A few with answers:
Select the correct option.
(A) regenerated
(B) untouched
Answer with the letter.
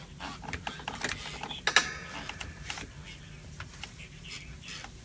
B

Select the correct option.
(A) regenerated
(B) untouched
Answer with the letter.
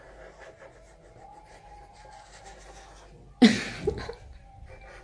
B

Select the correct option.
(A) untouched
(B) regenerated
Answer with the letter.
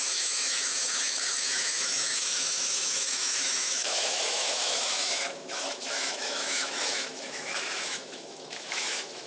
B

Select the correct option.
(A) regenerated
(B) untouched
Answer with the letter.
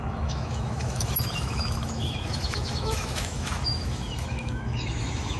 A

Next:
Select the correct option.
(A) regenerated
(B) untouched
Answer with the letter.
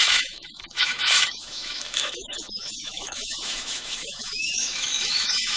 A